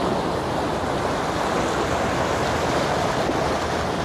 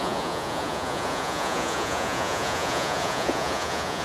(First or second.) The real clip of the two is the first